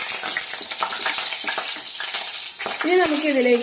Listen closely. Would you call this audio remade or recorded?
recorded